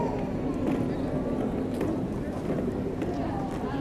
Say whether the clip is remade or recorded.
recorded